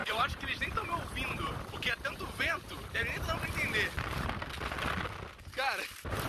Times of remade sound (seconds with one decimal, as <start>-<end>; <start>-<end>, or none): 0.0-3.0